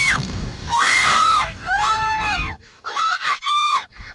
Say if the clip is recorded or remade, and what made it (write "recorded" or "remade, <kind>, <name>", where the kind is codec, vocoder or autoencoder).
remade, codec, DAC